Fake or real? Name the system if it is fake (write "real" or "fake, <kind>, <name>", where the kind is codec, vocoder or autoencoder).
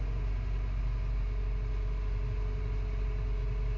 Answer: real